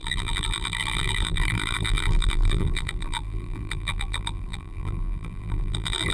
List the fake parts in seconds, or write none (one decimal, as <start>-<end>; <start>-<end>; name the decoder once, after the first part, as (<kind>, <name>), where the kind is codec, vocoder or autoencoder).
0.0-6.1 (vocoder, BigVGAN v2)